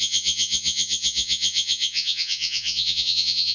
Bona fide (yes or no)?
no